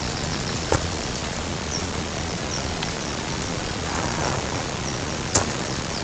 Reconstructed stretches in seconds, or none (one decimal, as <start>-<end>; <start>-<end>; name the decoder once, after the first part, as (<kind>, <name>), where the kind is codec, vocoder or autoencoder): 0.0-6.0 (vocoder, Vocos)